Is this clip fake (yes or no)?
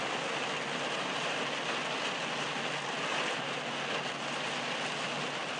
no